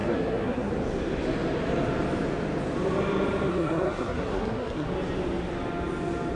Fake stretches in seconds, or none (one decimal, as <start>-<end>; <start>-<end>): 0.0-0.7; 3.5-4.9